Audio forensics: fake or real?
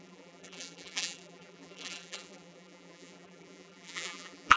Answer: fake